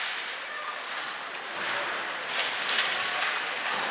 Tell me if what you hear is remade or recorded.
recorded